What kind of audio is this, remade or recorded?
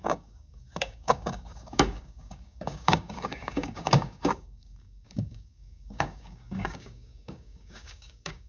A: remade